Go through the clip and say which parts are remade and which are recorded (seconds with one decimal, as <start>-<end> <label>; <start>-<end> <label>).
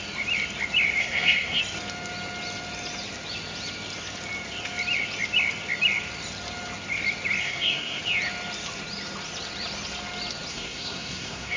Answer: 0.0-1.0 recorded; 1.0-1.6 remade; 1.6-7.4 recorded; 7.4-8.0 remade; 8.0-10.5 recorded; 10.5-11.6 remade